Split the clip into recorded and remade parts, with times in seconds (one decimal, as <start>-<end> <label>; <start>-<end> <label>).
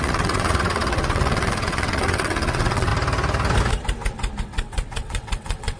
0.0-2.9 remade; 2.9-4.4 recorded; 4.4-5.8 remade